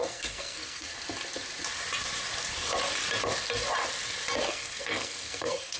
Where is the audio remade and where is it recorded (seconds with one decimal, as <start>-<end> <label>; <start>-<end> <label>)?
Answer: 0.0-0.9 remade; 0.9-4.4 recorded; 4.4-5.8 remade